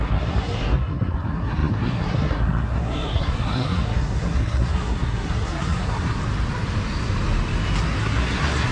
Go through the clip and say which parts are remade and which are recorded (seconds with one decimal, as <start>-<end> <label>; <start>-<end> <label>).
0.0-6.2 remade; 6.2-8.0 recorded; 8.0-8.7 remade